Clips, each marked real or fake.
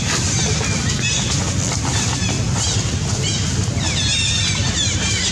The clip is real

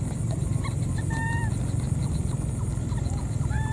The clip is real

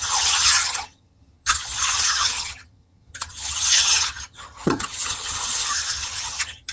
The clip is fake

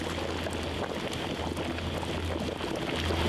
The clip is real